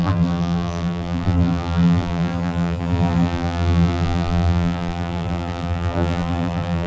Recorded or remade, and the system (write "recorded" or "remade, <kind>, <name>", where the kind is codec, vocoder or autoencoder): remade, vocoder, BigVGAN v2